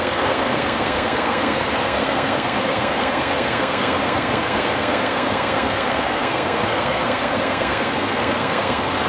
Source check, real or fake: fake